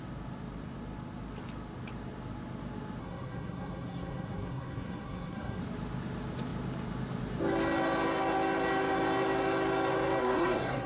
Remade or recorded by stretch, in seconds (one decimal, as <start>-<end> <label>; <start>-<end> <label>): 0.0-3.0 recorded; 3.0-5.6 remade; 5.6-10.2 recorded; 10.2-10.9 remade